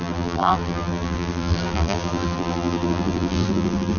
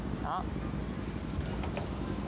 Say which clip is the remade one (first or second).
first